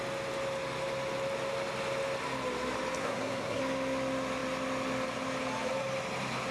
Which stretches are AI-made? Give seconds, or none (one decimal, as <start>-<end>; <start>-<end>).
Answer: 3.0-3.6